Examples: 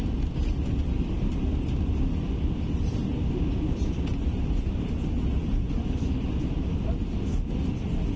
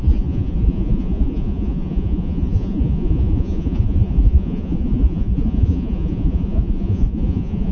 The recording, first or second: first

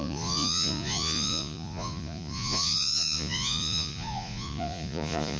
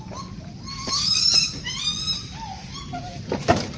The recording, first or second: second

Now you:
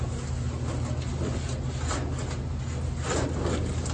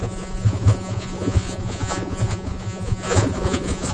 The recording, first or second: first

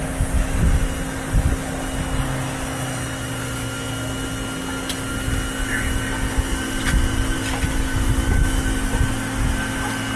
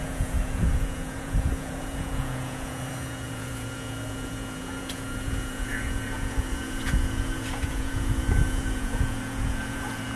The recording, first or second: first